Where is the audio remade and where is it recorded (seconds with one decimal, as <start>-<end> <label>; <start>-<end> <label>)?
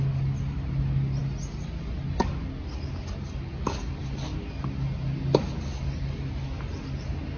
0.0-7.4 recorded